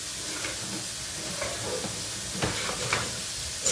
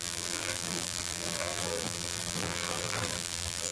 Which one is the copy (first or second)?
second